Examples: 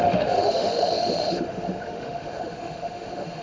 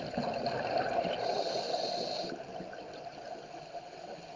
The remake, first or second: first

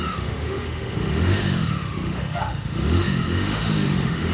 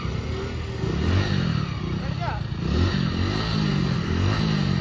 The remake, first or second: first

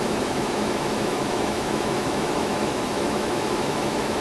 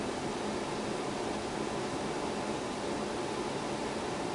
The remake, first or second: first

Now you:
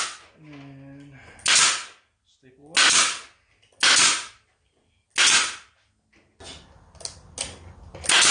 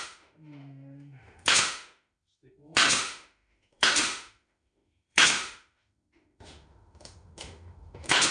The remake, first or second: second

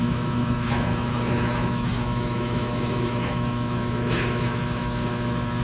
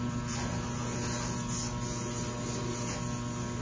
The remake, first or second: first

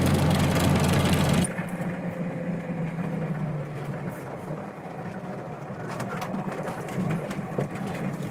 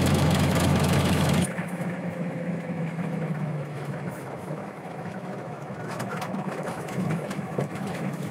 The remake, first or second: second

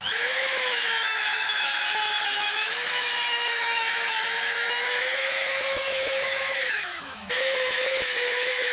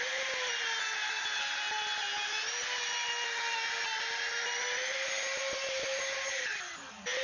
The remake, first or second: first